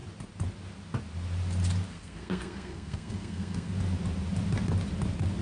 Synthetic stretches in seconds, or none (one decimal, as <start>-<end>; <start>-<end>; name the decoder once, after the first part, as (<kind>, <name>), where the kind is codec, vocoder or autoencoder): 1.9-3.7 (codec, SNAC)